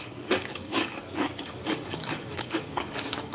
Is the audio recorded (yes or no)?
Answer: no